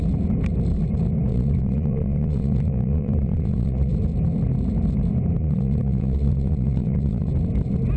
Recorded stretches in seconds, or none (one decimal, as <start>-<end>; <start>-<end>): 0.0-1.3; 3.9-5.4; 7.3-8.0